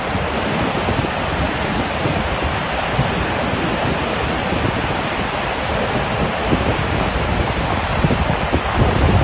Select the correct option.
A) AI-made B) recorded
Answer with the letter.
B